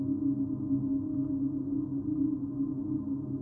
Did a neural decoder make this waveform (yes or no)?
no